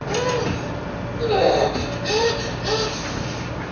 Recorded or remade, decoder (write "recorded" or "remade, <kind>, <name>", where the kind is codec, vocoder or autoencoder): recorded